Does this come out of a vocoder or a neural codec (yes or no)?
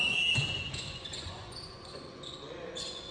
yes